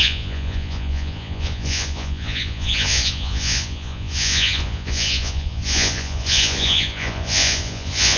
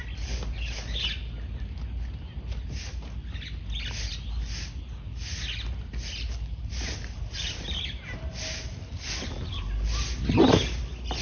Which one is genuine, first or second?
second